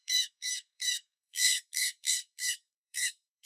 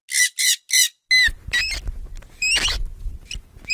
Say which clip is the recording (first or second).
second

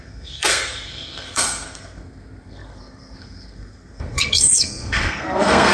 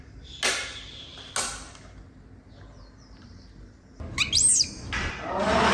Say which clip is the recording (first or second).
second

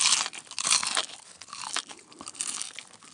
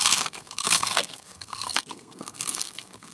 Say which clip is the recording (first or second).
first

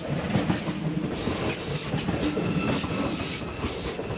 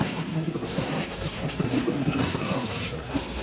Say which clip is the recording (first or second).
first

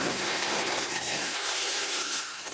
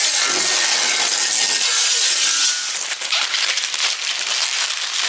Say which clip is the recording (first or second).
second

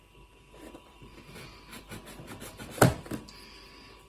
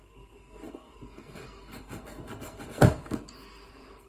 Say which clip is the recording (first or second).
first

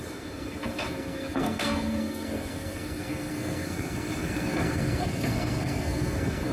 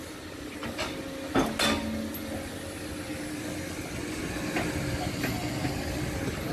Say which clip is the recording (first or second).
second